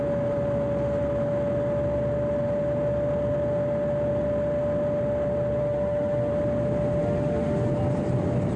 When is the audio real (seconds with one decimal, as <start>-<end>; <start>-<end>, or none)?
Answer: 0.0-5.6; 6.3-7.0; 7.7-8.6